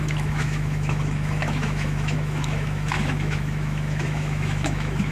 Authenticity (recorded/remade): remade